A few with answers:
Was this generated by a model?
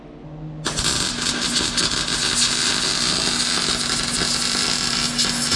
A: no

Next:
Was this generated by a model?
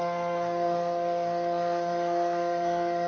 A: yes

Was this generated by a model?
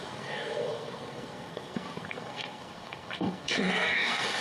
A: yes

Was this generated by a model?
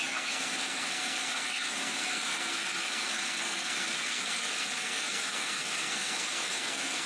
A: yes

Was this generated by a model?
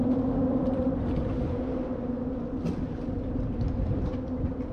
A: no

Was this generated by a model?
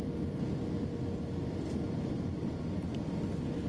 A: no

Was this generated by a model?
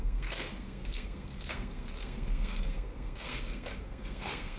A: yes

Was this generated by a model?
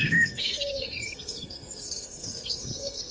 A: yes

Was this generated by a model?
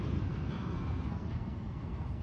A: yes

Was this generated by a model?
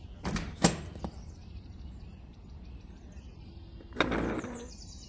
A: no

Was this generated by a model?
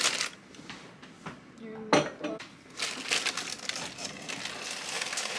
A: no